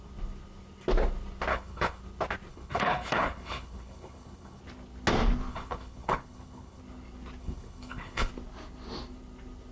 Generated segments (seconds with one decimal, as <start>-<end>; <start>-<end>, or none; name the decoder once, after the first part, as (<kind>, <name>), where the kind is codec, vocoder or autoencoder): 1.5-2.0 (codec, HILCodec); 2.5-4.6; 5.5-6.8; 7.4-8.3

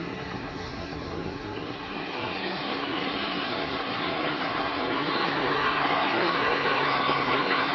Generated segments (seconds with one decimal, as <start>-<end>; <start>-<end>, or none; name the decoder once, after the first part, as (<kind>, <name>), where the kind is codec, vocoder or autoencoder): 0.0-7.7 (codec, SNAC)

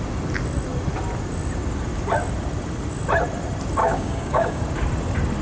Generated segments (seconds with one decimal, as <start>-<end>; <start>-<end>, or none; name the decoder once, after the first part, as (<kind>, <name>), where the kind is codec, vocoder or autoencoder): 3.8-4.6 (codec, DAC)

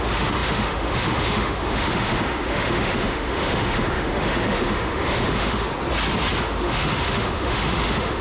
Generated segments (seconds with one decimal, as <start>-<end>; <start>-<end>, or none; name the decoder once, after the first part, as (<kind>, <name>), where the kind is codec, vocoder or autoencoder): 0.0-5.7 (autoencoder, DAC-VAE); 6.4-8.2

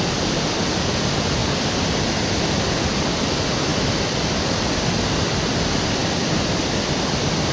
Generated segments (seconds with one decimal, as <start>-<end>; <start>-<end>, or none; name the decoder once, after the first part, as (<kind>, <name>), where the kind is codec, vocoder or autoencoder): none

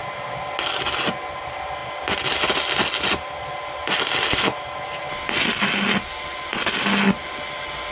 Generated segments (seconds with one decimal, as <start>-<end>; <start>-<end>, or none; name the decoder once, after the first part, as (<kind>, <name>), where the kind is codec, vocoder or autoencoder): none

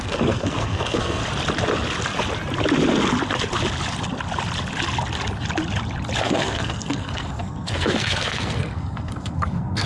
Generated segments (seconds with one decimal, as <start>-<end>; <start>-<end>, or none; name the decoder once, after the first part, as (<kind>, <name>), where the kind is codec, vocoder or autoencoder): 0.0-1.2 (codec, SNAC); 6.2-9.9

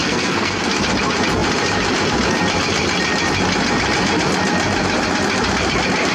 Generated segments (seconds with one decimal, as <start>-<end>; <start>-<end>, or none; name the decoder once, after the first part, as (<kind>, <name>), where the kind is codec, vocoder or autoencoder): 0.0-0.7 (codec, SNAC)